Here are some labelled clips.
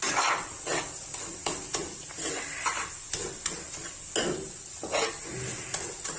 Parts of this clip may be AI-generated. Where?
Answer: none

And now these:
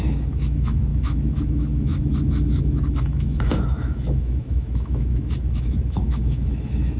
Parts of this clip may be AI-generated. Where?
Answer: 0.0-7.0 (autoencoder, DAC-VAE)

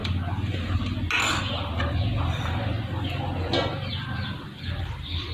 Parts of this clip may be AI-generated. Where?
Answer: none